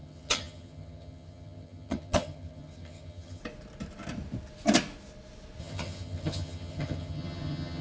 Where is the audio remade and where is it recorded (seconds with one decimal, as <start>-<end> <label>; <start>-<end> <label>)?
0.0-3.4 remade; 3.4-5.6 recorded; 5.6-7.8 remade